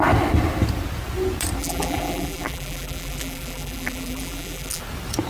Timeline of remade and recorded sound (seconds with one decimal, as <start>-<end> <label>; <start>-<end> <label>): 0.0-1.6 recorded; 1.6-4.8 remade; 4.8-5.3 recorded